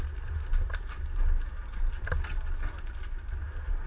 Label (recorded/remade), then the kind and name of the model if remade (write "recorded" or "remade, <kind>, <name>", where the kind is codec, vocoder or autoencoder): recorded